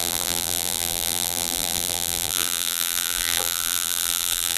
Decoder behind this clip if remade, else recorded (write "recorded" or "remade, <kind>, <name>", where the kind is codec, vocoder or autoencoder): remade, vocoder, BigVGAN v2